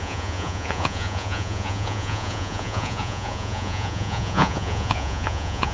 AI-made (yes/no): yes